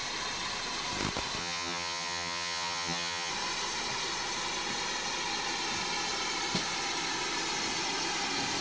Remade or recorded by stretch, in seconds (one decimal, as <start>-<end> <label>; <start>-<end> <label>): 0.0-1.4 recorded; 1.4-3.3 remade; 3.3-8.6 recorded